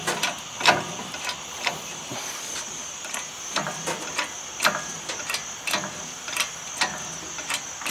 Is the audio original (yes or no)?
yes